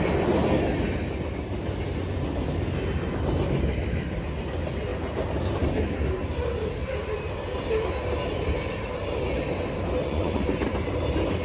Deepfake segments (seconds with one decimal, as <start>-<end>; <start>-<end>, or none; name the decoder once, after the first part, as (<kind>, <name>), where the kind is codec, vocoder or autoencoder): 10.0-10.5 (vocoder, Vocos)